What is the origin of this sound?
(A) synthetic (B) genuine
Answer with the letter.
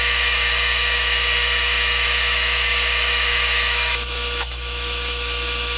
A